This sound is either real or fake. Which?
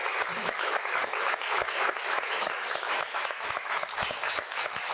fake